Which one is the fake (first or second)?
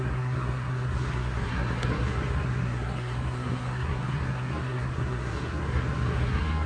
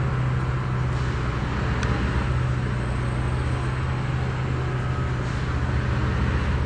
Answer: first